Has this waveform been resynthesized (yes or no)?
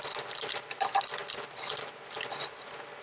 no